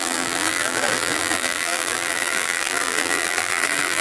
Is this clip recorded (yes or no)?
no